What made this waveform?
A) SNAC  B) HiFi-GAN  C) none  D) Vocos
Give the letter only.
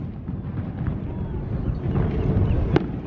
C